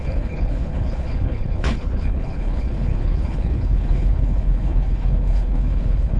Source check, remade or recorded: remade